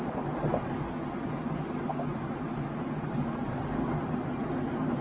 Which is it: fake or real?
real